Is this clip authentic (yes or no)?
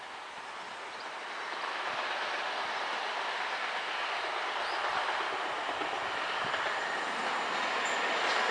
yes